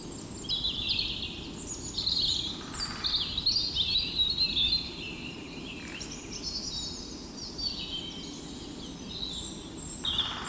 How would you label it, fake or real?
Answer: real